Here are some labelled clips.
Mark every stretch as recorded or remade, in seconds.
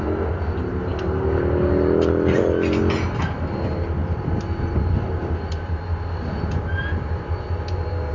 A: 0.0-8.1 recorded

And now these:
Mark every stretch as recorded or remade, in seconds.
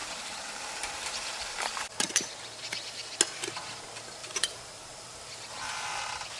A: 0.0-1.9 remade; 1.9-4.2 recorded; 4.2-6.0 remade; 6.0-6.4 recorded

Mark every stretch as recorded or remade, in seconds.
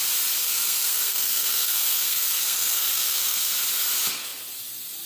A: 0.0-0.4 recorded; 0.4-3.5 remade; 3.5-5.1 recorded